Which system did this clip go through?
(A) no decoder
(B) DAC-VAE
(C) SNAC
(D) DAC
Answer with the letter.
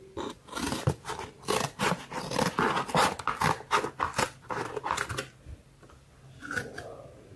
A